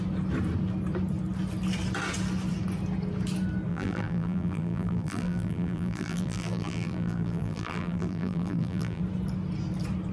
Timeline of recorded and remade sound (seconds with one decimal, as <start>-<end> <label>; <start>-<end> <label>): 0.0-3.7 recorded; 3.7-9.0 remade; 9.0-10.1 recorded